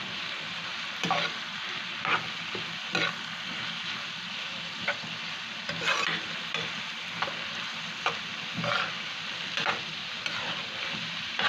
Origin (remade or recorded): recorded